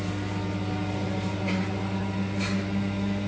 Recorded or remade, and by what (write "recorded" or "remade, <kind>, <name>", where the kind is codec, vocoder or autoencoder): recorded